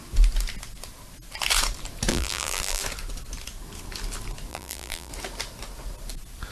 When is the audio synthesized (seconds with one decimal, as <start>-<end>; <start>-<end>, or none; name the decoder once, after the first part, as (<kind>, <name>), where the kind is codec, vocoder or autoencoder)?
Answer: 2.1-2.8 (vocoder, BigVGAN v2); 4.5-5.1